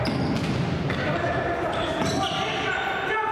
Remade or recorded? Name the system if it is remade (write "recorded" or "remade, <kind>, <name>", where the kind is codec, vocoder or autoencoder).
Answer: recorded